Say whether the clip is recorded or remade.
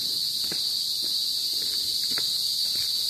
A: recorded